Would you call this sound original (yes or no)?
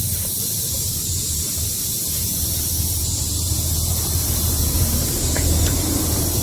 no